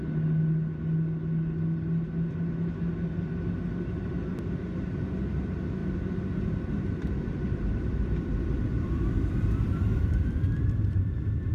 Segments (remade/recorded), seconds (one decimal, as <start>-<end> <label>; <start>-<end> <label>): 0.0-5.8 recorded; 5.8-11.0 remade; 11.0-11.5 recorded

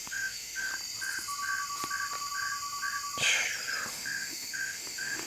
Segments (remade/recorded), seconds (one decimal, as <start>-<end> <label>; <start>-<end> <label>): 0.0-0.7 remade; 0.7-3.9 recorded; 3.9-5.3 remade

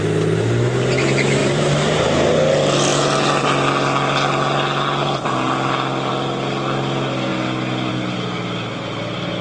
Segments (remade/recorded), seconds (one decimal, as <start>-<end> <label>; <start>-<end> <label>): 0.0-1.4 recorded; 1.4-2.0 remade; 2.0-9.4 recorded

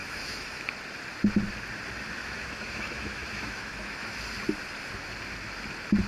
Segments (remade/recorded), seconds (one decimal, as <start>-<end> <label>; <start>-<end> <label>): 0.0-0.7 remade; 0.7-2.2 recorded; 2.2-4.2 remade; 4.2-6.1 recorded

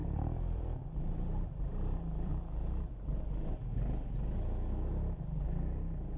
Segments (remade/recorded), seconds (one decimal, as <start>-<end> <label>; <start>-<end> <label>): 0.0-2.3 remade; 2.3-6.2 recorded

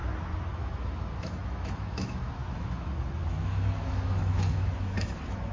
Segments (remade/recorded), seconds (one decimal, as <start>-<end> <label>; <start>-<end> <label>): 0.0-0.5 recorded; 0.5-5.5 remade

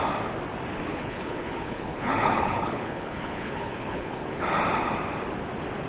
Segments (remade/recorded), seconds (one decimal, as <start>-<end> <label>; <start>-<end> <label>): 0.0-0.9 recorded; 0.9-4.4 remade; 4.4-5.9 recorded